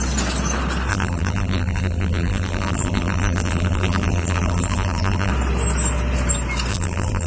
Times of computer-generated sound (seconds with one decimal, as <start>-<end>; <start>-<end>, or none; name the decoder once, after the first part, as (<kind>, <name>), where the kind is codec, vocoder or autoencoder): 0.9-5.3 (vocoder, BigVGAN v2); 6.7-7.3